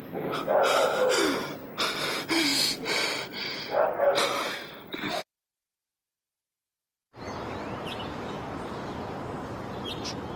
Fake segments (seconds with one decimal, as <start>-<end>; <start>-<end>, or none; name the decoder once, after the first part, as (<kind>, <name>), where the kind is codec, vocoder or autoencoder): 2.5-7.1 (vocoder, BigVGAN v2); 7.6-8.7